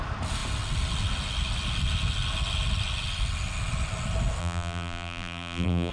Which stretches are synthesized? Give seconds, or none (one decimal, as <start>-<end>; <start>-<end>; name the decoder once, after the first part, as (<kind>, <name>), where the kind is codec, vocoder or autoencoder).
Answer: 4.4-5.9 (vocoder, BigVGAN v2)